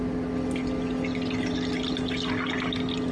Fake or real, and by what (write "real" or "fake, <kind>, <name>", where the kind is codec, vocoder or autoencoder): real